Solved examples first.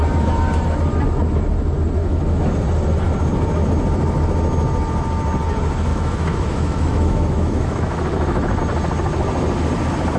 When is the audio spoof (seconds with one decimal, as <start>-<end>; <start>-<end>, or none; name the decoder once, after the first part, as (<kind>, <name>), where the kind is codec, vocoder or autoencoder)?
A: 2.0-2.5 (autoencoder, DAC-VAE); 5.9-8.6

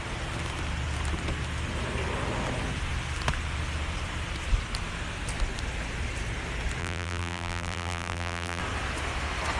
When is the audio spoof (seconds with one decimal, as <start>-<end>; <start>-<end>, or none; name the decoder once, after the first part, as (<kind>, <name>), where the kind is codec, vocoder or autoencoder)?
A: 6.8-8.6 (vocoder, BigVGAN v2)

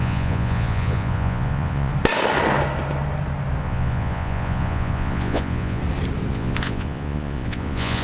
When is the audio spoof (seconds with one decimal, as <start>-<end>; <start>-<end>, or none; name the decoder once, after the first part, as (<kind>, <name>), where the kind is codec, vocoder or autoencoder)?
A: 0.0-1.9 (vocoder, Vocos); 3.6-5.8; 6.3-8.0

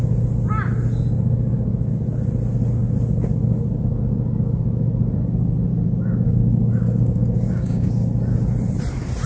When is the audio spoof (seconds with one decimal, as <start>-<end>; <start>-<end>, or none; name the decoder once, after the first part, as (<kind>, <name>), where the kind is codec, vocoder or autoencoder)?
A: 5.7-7.9 (codec, DAC)

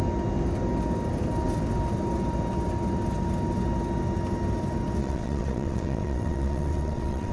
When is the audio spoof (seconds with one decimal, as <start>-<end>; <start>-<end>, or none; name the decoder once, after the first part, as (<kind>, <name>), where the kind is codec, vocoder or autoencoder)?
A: 5.0-7.3 (vocoder, WaveNeXt)

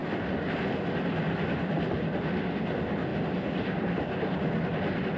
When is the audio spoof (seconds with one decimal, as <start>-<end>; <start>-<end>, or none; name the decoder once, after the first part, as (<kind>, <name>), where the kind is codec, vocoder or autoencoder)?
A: none

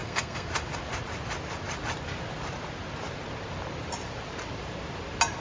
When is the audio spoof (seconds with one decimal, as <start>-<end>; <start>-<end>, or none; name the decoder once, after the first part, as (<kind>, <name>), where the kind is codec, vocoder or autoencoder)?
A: 0.0-0.5 (codec, SNAC)